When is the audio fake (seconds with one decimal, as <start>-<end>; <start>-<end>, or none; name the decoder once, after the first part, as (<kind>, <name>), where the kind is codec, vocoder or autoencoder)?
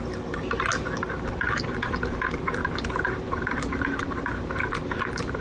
2.6-3.8 (vocoder, BigVGAN v2)